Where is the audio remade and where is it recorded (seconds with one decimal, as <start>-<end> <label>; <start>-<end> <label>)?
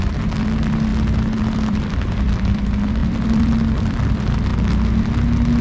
0.0-0.9 remade; 0.9-1.4 recorded; 1.4-4.5 remade; 4.5-5.6 recorded